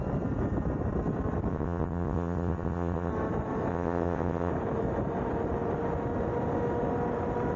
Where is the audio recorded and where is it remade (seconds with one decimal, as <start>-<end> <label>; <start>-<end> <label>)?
0.0-1.5 recorded; 1.5-3.1 remade; 3.1-3.7 recorded; 3.7-4.5 remade; 4.5-7.6 recorded